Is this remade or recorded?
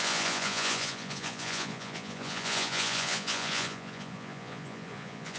remade